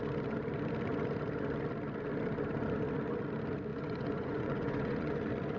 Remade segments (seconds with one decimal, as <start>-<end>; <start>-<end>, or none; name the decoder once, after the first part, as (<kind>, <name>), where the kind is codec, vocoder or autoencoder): 3.7-5.1 (vocoder, Vocos)